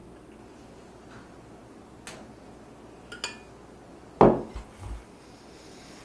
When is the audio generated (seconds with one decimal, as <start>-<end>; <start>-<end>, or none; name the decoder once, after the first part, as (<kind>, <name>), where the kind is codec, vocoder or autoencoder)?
none